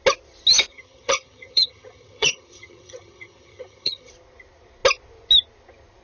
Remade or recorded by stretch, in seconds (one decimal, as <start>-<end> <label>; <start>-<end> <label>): 0.0-0.7 recorded; 0.7-4.1 remade; 4.1-6.0 recorded